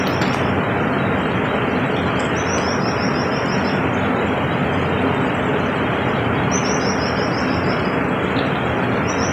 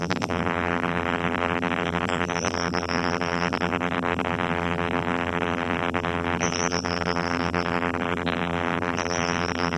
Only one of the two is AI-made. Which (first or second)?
second